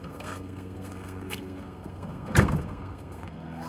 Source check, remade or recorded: remade